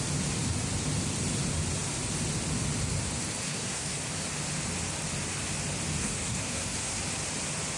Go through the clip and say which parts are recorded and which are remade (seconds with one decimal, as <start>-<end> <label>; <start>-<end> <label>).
0.0-3.4 recorded; 3.4-4.0 remade; 4.0-6.0 recorded; 6.0-7.0 remade; 7.0-7.8 recorded